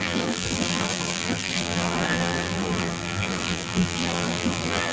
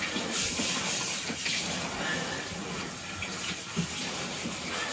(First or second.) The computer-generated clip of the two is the first